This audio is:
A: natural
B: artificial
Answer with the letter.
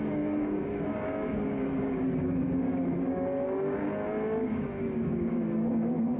B